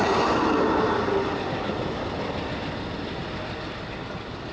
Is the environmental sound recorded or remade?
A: recorded